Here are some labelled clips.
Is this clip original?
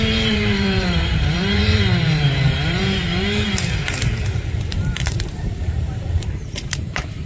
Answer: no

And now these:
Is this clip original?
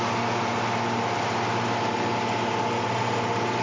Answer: yes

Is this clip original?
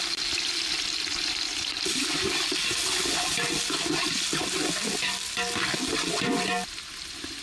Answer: yes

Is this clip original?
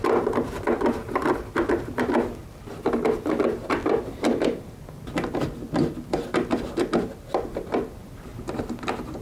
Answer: yes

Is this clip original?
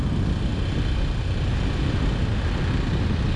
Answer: yes